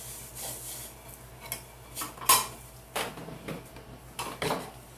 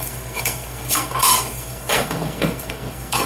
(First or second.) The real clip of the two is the first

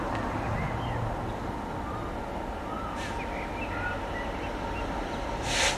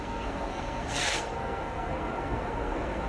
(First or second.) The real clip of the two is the first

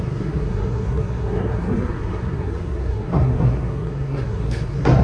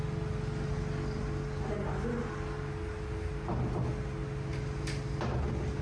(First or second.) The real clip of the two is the second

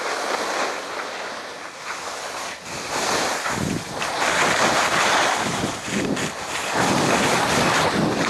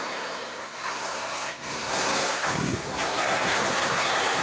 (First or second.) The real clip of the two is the first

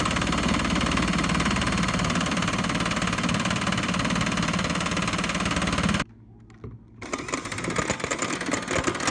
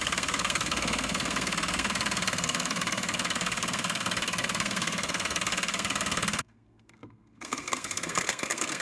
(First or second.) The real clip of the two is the first